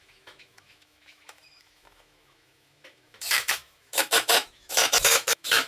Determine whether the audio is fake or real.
fake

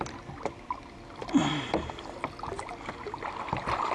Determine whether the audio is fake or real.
real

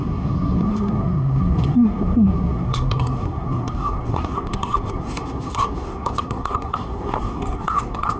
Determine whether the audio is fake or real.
fake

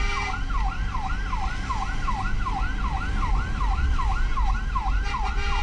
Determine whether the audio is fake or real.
real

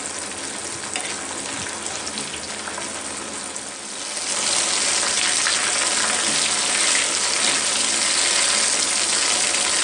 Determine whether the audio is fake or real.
real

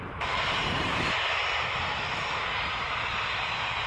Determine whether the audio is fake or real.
fake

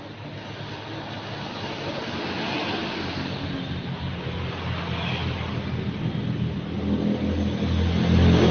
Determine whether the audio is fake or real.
real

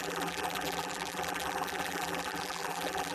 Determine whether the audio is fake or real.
fake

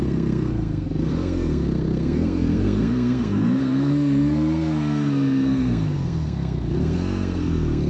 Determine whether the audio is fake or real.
fake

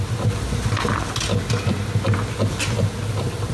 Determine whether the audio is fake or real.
real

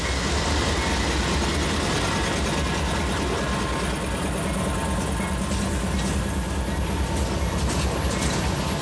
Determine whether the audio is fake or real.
real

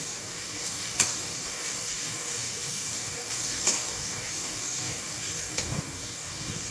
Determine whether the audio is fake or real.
fake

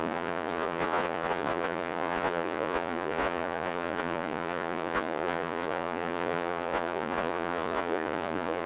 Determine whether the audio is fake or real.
fake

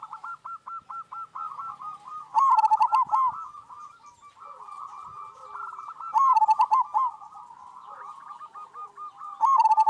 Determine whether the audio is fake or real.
real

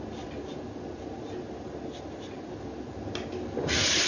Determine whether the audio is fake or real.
real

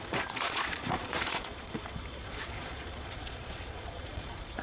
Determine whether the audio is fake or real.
fake